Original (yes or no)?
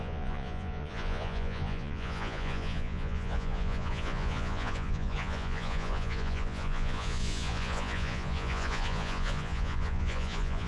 no